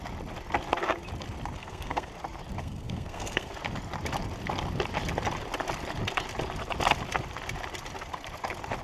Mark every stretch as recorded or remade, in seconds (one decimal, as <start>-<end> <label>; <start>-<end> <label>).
0.0-1.6 recorded; 1.6-2.1 remade; 2.1-2.6 recorded; 2.6-3.5 remade; 3.5-8.8 recorded